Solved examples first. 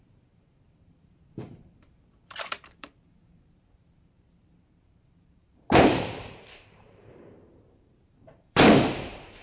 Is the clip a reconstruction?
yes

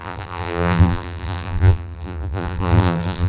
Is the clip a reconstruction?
yes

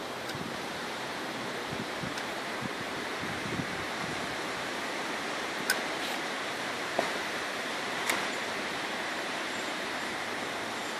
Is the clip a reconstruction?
yes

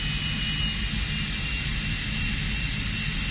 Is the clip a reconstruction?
no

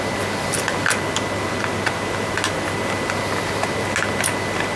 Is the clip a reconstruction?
no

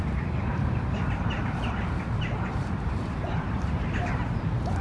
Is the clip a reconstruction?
yes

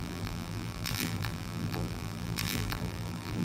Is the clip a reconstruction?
yes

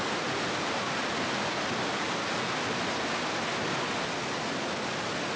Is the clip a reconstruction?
no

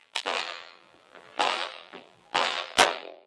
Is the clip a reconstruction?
yes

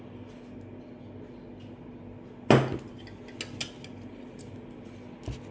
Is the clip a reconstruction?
no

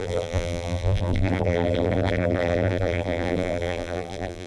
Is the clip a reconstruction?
yes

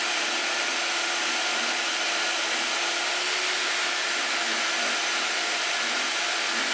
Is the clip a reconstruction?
no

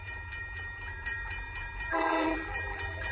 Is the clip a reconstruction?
yes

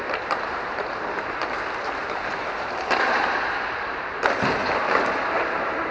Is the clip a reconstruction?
yes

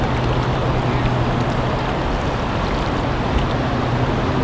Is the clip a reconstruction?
no